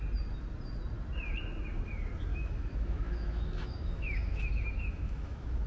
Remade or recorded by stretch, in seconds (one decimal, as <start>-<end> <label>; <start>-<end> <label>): 0.0-2.3 recorded; 2.3-5.7 remade